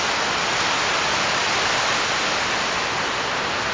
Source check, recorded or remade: recorded